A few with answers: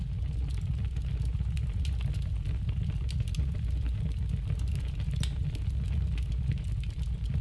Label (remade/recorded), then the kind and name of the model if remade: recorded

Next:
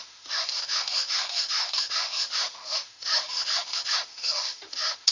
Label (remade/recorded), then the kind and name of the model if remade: remade, autoencoder, DAC-VAE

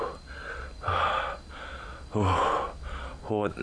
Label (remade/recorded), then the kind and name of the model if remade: recorded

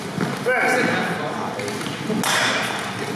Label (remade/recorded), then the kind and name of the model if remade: recorded